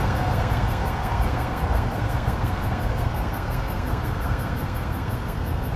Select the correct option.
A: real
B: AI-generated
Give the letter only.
B